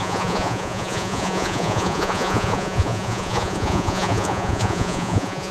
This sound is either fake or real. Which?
fake